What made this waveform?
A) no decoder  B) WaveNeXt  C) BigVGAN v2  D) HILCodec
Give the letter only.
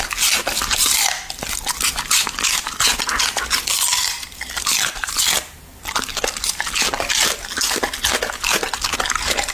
A